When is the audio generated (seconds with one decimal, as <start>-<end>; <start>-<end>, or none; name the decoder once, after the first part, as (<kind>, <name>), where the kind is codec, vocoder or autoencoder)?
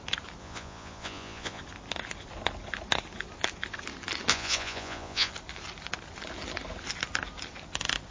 0.4-1.6 (vocoder, Vocos); 4.3-5.3